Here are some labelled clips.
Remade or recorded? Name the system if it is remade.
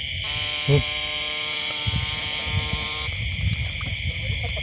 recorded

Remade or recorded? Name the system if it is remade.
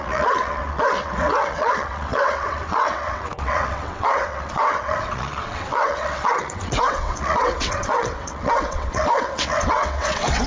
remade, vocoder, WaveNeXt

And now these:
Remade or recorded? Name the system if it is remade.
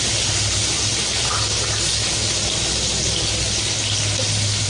recorded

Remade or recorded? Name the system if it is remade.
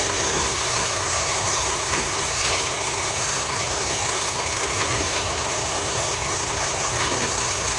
remade, codec, SNAC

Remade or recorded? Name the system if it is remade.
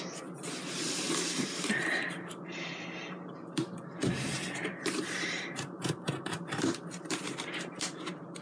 remade, vocoder, BigVGAN v2